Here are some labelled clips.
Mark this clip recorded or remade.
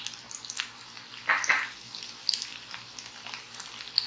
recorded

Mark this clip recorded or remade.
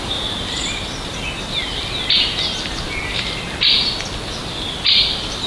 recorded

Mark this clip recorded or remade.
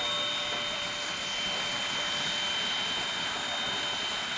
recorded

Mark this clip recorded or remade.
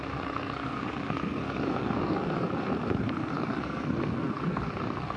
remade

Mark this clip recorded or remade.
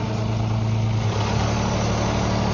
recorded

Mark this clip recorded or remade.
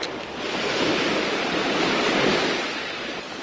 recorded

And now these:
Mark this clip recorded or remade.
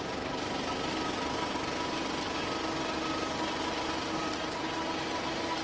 recorded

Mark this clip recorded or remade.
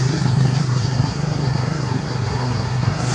remade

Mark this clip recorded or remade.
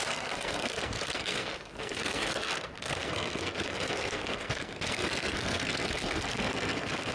remade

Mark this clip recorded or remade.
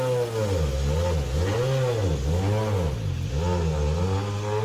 recorded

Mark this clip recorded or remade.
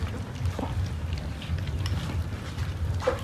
recorded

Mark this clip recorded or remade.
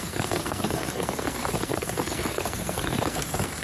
remade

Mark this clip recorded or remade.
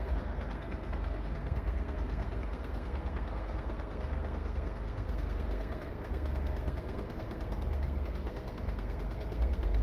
remade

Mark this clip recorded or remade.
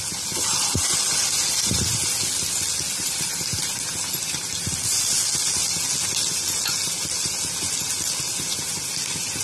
recorded